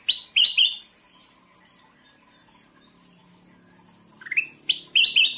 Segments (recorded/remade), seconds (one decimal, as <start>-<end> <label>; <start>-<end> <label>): 0.0-5.4 recorded